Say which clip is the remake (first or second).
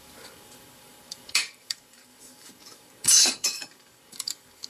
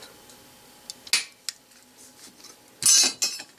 first